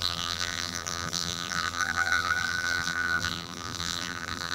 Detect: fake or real fake